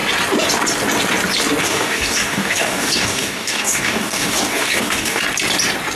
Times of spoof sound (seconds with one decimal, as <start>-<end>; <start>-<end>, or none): 1.6-5.2